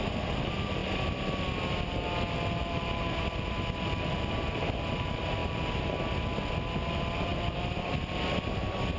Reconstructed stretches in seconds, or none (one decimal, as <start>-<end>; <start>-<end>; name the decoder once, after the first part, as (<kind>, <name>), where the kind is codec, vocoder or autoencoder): none